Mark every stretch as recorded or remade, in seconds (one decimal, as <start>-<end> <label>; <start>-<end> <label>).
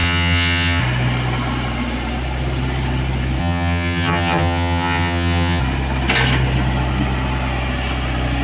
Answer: 0.0-0.8 remade; 0.8-3.4 recorded; 3.4-5.6 remade; 5.6-8.4 recorded